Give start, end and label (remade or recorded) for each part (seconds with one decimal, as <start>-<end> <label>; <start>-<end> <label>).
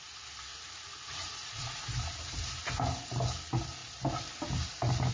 0.0-0.5 recorded; 0.5-1.9 remade; 1.9-5.1 recorded